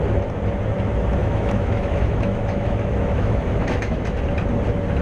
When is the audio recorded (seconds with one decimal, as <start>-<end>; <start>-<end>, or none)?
0.0-1.2; 4.2-5.0